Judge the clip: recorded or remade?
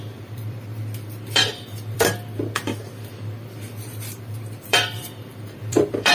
remade